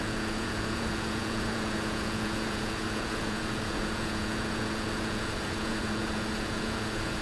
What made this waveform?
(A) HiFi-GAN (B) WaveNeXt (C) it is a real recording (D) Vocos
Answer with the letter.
D